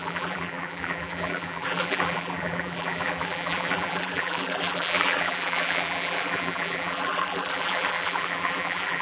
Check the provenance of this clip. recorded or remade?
remade